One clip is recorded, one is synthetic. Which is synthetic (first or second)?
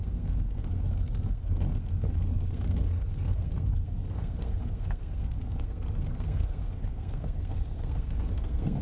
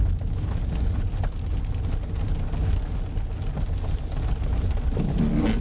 first